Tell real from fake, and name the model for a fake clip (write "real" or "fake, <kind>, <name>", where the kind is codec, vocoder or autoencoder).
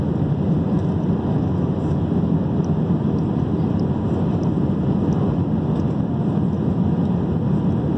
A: real